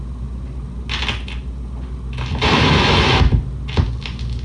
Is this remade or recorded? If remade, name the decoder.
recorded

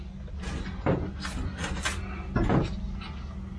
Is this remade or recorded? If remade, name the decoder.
recorded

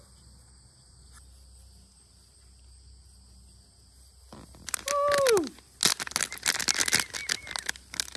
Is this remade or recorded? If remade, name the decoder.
recorded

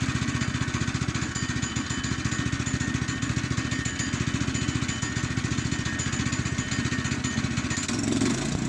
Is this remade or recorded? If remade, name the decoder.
recorded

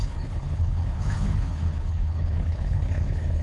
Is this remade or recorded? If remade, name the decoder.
remade, codec, HILCodec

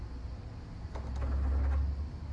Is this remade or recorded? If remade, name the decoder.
recorded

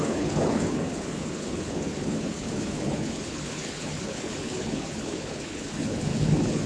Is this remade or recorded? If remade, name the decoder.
remade, codec, HILCodec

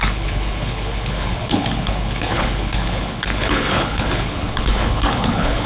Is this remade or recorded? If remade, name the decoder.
remade, codec, HILCodec